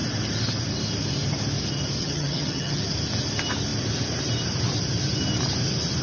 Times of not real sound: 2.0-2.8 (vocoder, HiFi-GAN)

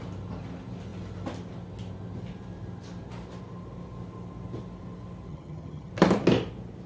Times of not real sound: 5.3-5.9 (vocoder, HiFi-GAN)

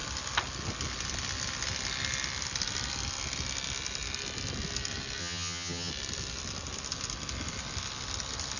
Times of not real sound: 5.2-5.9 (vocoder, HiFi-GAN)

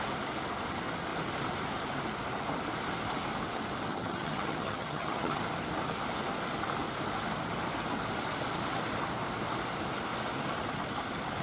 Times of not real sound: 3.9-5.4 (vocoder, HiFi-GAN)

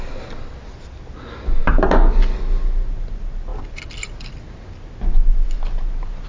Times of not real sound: none

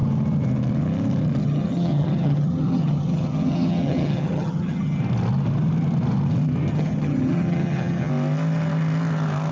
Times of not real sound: 1.4-5.0 (vocoder, HiFi-GAN); 6.7-8.1